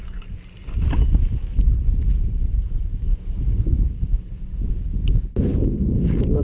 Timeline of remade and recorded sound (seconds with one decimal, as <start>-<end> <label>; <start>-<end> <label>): 0.0-3.1 recorded; 3.1-4.7 remade; 4.7-5.5 recorded; 5.5-6.4 remade